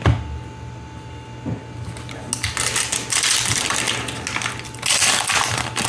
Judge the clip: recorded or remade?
recorded